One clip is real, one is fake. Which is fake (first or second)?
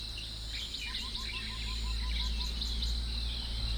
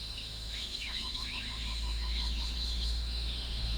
second